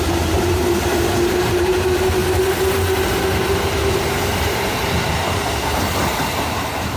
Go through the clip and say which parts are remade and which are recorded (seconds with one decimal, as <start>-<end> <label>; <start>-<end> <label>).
0.0-2.2 remade; 2.2-3.9 recorded; 3.9-7.0 remade